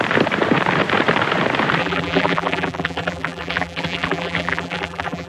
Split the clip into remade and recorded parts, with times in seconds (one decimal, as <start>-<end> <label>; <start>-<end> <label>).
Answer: 0.0-1.8 recorded; 1.8-5.3 remade